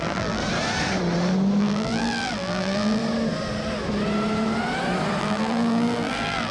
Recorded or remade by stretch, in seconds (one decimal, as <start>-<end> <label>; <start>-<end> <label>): 0.0-0.4 remade; 0.4-1.6 recorded; 1.6-3.0 remade; 3.0-5.2 recorded; 5.2-6.5 remade